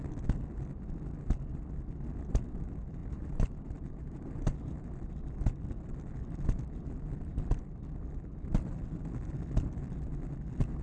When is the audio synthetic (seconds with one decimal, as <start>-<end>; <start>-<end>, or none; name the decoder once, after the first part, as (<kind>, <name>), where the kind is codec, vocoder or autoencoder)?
3.0-5.1 (vocoder, BigVGAN v2)